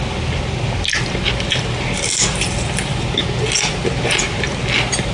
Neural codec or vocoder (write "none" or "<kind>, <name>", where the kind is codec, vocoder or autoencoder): none